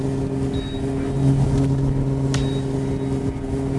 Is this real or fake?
real